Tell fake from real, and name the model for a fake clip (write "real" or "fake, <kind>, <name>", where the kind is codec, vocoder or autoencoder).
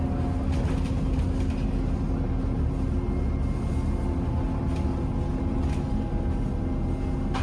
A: real